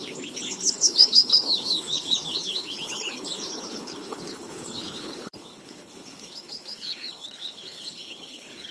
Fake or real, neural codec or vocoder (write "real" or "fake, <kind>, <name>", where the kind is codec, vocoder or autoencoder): fake, codec, HILCodec